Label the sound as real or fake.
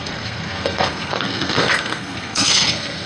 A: fake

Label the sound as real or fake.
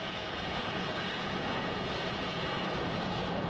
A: fake